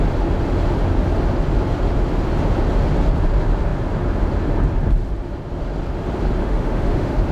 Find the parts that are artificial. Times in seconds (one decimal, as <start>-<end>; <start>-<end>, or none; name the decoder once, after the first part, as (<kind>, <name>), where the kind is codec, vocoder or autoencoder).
6.4-7.3 (autoencoder, DAC-VAE)